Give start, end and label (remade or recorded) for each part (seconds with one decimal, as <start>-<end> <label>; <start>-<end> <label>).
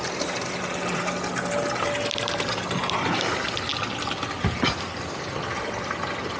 0.0-6.4 recorded